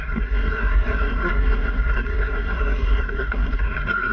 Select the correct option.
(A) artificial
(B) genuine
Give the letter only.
A